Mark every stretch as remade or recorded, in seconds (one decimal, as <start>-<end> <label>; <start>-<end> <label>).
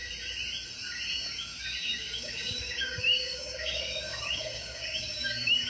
0.0-2.2 recorded; 2.2-5.7 remade